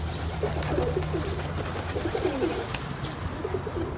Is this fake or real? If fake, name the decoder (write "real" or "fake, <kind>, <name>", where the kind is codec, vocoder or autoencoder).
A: real